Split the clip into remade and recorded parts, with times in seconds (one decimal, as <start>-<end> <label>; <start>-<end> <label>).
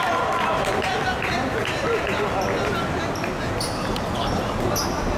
0.0-5.2 recorded